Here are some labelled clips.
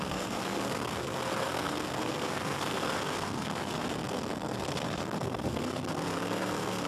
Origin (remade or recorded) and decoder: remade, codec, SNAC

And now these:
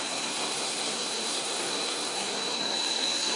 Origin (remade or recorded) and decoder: remade, codec, SNAC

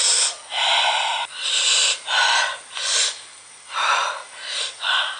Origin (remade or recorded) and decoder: recorded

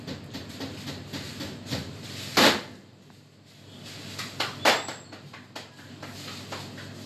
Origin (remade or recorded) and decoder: recorded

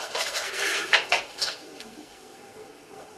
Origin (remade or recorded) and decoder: remade, codec, SNAC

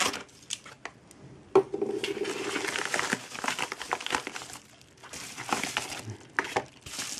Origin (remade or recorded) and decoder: recorded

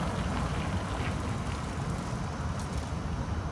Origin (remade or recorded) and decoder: recorded